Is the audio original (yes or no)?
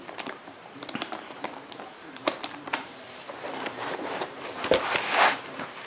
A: no